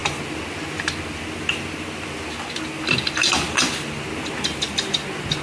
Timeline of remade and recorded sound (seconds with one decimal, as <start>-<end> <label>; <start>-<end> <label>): 0.0-5.4 recorded